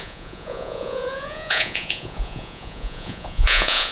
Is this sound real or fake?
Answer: fake